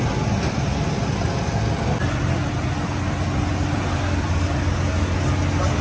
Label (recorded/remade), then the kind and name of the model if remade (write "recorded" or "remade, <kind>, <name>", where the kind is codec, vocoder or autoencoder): recorded